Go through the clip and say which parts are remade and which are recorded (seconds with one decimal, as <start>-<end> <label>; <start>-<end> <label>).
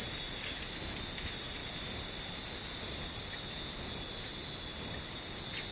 0.0-5.7 recorded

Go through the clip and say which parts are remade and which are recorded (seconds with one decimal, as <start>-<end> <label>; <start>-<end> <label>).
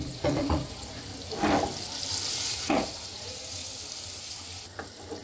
0.0-1.1 remade; 1.1-2.3 recorded; 2.3-3.6 remade; 3.6-5.2 recorded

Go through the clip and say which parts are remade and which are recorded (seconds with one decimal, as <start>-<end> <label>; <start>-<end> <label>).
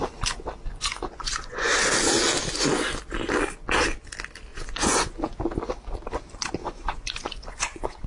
0.0-0.7 recorded; 0.7-1.7 remade; 1.7-4.5 recorded; 4.5-5.2 remade; 5.2-6.6 recorded; 6.6-8.1 remade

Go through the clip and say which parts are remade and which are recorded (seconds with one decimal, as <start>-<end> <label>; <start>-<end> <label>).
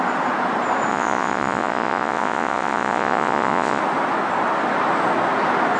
0.0-0.9 recorded; 0.9-3.8 remade; 3.8-5.8 recorded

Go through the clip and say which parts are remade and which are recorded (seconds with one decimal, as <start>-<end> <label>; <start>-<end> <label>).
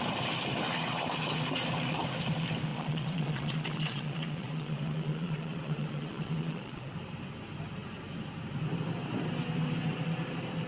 0.0-2.7 recorded; 2.7-6.9 remade; 6.9-10.7 recorded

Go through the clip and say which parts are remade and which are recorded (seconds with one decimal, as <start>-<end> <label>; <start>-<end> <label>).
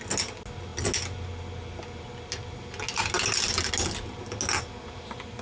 0.0-5.4 recorded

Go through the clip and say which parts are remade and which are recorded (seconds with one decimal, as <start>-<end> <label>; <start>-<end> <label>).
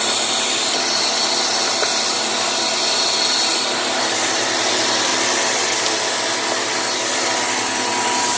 0.0-8.4 recorded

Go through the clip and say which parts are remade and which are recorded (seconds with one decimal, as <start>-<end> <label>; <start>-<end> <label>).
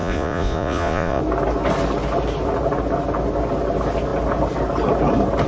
0.0-1.2 remade; 1.2-5.5 recorded